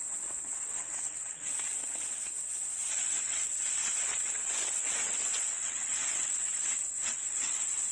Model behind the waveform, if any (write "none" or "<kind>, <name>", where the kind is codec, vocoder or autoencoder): vocoder, WaveNeXt